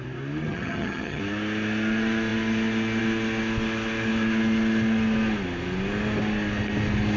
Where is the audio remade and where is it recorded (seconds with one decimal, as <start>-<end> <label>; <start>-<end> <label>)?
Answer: 0.0-0.4 recorded; 0.4-1.2 remade; 1.2-7.2 recorded